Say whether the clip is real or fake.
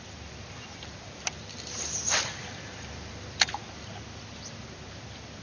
real